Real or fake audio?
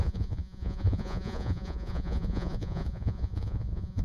fake